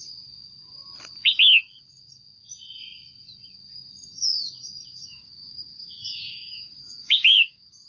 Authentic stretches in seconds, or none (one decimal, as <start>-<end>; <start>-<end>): 0.0-4.9